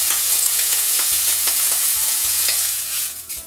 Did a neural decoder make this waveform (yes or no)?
yes